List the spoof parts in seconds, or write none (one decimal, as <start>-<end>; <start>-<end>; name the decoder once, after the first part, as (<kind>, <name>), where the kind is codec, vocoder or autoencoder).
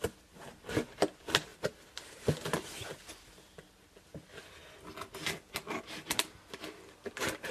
none